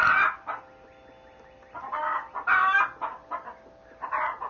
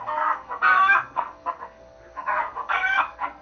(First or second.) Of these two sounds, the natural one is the first